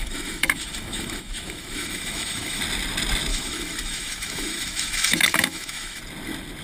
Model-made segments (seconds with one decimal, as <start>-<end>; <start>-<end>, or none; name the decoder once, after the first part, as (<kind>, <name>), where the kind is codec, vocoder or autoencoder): 0.0-2.6 (autoencoder, DAC-VAE); 3.3-6.0